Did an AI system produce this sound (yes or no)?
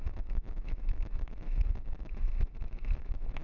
yes